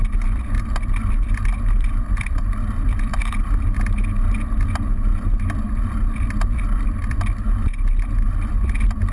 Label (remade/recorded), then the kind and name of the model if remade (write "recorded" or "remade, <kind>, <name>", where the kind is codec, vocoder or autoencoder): remade, vocoder, BigVGAN v2